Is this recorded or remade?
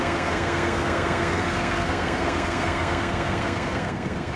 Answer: remade